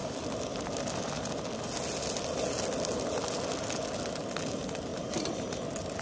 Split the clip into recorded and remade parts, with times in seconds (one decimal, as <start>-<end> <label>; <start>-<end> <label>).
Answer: 0.0-4.9 recorded; 4.9-5.6 remade; 5.6-6.0 recorded